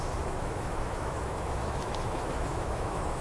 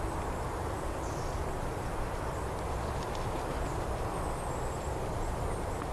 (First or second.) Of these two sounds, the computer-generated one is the first